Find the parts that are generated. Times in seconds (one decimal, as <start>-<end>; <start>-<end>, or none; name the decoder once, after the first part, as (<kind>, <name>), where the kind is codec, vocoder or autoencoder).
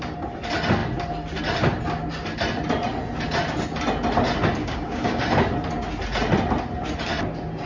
4.6-5.2 (codec, DAC)